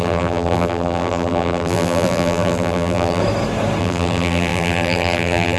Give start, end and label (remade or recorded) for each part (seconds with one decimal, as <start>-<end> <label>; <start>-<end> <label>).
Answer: 0.0-3.2 remade; 3.2-3.8 recorded; 3.8-5.6 remade